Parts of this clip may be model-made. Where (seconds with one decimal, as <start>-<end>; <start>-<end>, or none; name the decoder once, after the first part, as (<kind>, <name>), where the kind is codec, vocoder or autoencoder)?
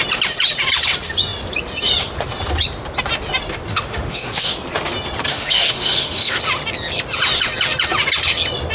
3.7-4.5 (autoencoder, DAC-VAE); 5.3-6.4